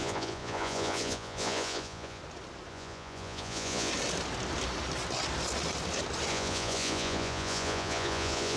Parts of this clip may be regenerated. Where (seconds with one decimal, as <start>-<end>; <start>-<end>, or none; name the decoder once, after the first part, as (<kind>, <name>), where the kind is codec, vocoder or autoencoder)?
0.0-2.2 (vocoder, Vocos); 2.7-3.9; 6.3-8.6